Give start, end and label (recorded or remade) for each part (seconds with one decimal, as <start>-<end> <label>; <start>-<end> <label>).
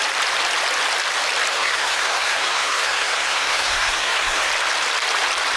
0.0-1.5 recorded; 1.5-4.5 remade; 4.5-5.6 recorded